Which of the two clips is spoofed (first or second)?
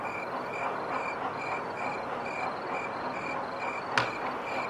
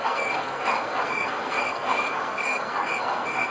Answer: second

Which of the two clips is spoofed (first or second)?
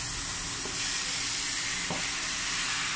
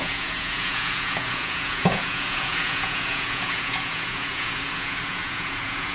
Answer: second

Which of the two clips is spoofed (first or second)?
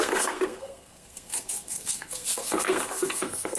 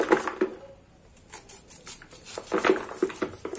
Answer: first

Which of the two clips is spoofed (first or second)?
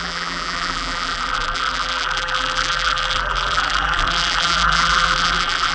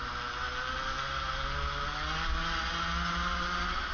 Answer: first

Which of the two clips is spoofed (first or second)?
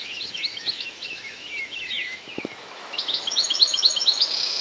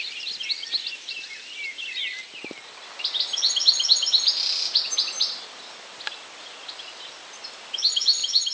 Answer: first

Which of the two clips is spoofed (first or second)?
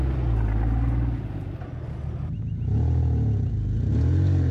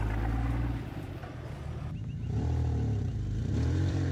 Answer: second